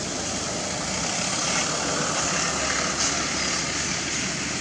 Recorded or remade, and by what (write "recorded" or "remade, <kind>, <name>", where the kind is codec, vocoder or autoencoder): recorded